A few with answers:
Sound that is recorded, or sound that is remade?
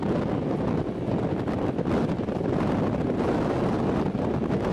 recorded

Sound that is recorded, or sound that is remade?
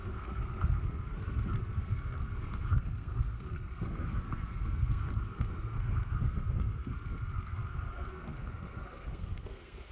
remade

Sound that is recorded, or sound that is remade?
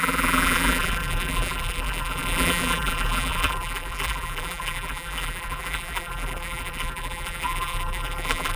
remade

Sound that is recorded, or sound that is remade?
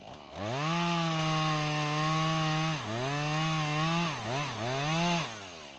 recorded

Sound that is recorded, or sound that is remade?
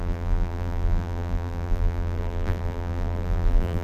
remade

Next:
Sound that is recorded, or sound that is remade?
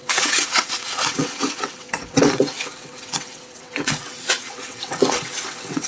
remade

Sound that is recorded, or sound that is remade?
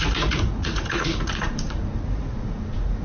remade